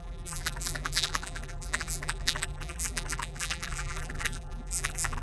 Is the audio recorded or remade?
remade